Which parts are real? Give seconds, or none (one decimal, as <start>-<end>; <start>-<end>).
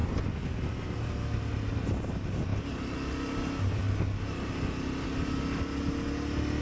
0.0-6.6